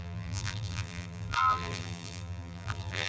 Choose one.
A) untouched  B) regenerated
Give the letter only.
B